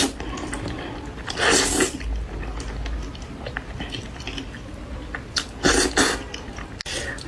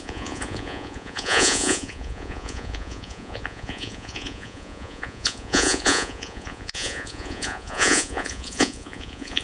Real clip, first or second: first